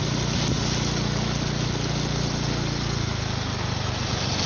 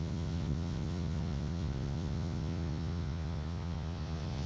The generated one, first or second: second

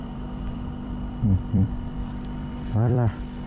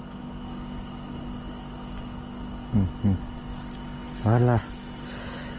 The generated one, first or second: first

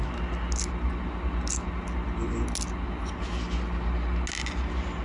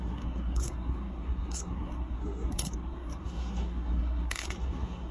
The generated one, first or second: second